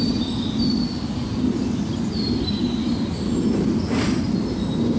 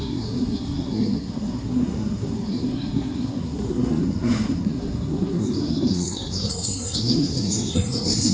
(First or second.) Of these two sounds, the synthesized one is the second